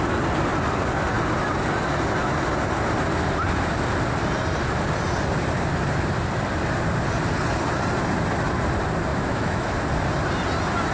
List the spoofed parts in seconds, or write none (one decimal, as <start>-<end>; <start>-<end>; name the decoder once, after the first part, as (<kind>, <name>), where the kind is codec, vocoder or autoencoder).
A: 9.1-9.8 (autoencoder, DAC-VAE)